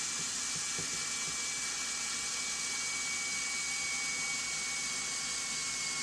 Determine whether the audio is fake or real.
real